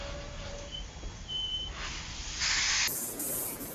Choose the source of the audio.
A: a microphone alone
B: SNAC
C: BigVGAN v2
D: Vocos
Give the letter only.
A